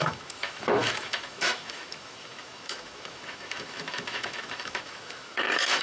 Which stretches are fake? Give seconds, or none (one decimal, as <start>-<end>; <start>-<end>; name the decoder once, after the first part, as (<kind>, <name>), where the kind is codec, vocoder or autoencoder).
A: 0.0-5.8 (autoencoder, DAC-VAE)